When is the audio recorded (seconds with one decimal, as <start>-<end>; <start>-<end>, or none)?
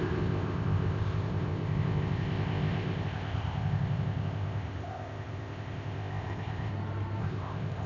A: 6.7-7.2